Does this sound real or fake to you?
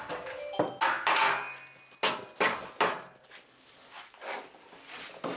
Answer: real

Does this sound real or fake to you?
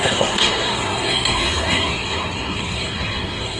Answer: fake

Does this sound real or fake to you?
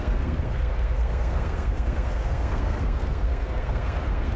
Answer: fake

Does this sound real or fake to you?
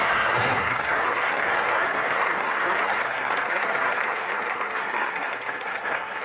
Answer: fake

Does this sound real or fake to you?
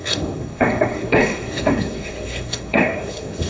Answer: fake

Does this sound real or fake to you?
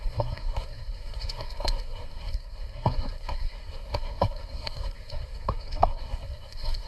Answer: fake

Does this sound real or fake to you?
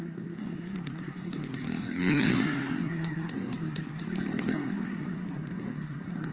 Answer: fake